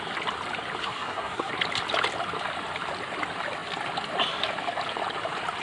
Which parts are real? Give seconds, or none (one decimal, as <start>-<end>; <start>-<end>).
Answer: 0.0-0.8; 1.5-5.6